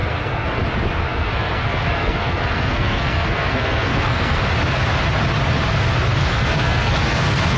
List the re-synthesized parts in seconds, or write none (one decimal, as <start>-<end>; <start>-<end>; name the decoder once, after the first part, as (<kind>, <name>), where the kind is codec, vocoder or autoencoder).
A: 0.0-0.6 (codec, SNAC); 1.0-4.4; 6.2-7.6